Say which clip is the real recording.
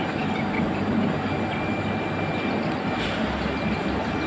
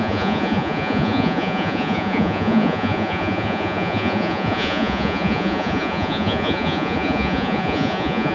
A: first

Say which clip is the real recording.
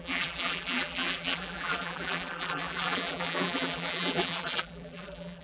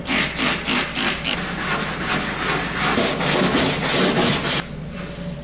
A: second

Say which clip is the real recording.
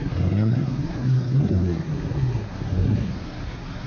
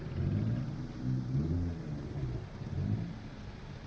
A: second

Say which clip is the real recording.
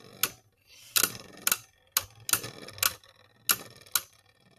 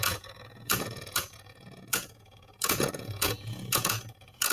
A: first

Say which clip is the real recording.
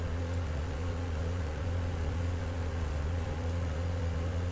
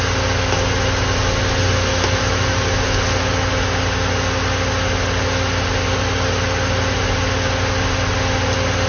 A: second